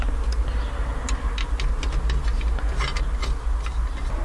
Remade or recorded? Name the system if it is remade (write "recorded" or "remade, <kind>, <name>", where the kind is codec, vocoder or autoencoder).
recorded